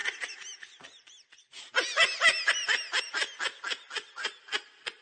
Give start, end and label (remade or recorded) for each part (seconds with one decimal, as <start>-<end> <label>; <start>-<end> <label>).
0.0-5.0 recorded